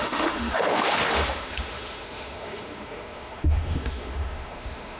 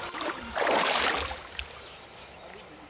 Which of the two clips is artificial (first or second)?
first